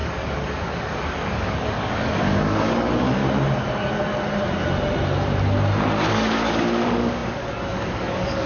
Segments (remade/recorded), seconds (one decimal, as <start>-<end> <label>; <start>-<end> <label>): 0.0-3.2 remade; 3.2-6.1 recorded; 6.1-8.5 remade